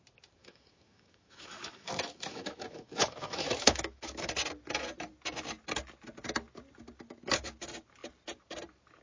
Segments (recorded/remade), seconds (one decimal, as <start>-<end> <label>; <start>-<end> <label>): 0.0-0.4 recorded; 0.4-4.3 remade; 4.3-9.0 recorded